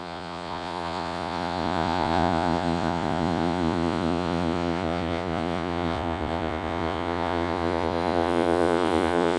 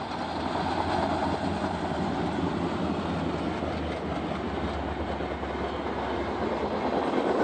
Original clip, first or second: second